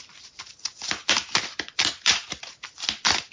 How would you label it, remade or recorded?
remade